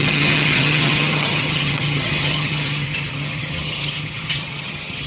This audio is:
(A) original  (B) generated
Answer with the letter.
B